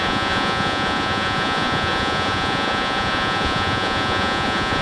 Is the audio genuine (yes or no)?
no